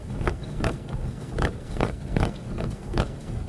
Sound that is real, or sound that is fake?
fake